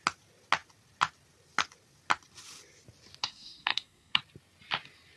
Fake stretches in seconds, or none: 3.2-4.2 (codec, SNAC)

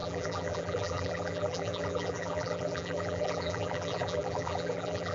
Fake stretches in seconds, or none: 0.0-5.1 (vocoder, BigVGAN v2)

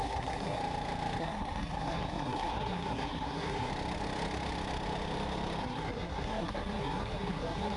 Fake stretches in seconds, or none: 0.0-0.6 (codec, SNAC); 1.2-3.7; 5.6-7.8